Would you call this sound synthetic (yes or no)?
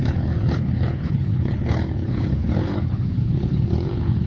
yes